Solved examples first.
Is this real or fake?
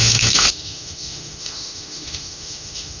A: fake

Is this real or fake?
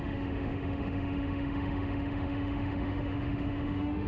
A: fake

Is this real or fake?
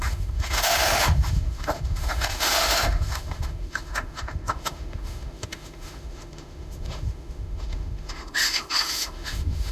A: fake